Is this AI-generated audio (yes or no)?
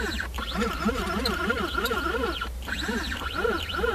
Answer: yes